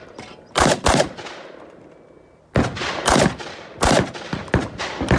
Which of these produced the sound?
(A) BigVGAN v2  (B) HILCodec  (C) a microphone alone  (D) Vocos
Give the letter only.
C